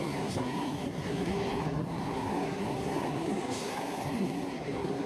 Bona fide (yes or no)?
no